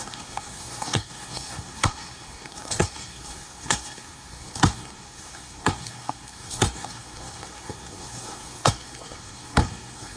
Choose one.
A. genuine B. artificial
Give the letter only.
B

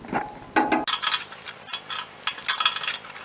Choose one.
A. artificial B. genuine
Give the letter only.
B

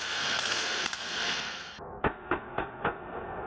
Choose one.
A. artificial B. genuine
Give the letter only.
A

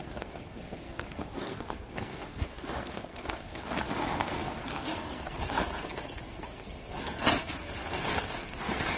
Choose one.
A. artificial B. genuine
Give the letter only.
A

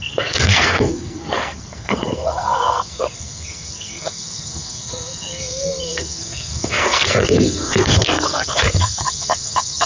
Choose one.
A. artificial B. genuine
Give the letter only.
A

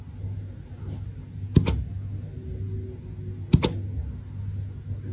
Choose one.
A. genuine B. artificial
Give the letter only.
A